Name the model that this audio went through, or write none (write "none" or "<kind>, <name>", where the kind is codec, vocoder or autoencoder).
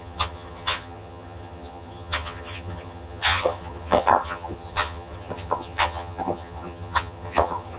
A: vocoder, HiFi-GAN